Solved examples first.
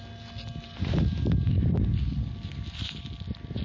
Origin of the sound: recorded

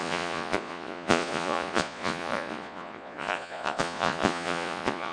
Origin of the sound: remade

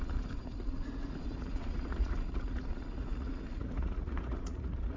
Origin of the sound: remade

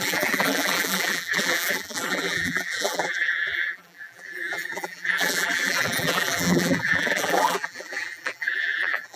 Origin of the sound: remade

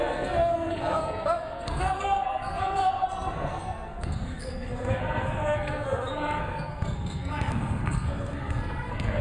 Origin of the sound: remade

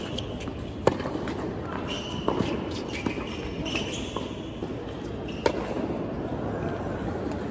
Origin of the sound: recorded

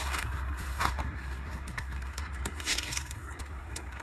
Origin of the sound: remade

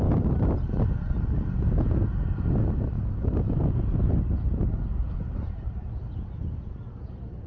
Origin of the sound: recorded